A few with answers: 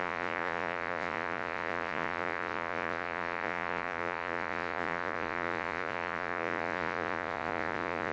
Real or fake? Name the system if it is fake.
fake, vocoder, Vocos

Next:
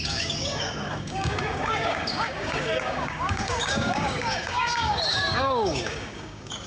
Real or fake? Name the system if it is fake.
fake, codec, DAC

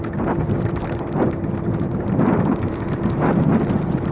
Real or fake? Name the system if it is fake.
real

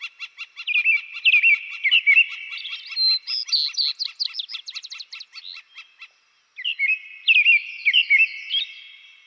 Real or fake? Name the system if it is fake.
real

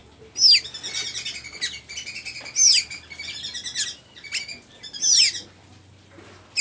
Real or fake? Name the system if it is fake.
real